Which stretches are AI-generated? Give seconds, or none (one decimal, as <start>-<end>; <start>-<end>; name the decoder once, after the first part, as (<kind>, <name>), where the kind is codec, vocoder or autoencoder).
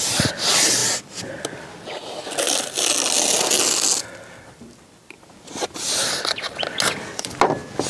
none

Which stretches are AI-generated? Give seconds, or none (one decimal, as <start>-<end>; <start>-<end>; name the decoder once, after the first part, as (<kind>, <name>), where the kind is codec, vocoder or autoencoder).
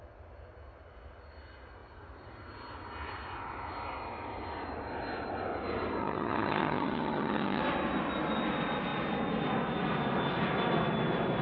6.0-7.6 (vocoder, HiFi-GAN)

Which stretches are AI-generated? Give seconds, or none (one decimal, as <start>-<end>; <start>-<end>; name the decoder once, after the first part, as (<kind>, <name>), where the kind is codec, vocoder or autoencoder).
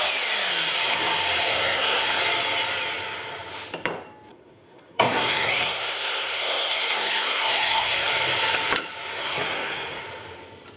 1.5-2.2 (codec, SNAC); 4.3-8.1; 9.1-10.0